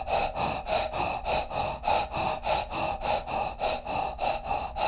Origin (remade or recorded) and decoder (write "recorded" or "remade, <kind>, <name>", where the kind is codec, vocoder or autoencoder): recorded